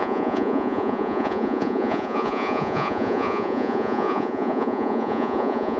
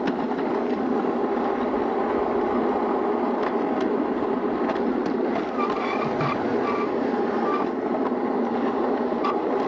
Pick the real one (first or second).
second